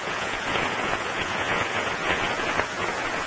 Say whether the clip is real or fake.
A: fake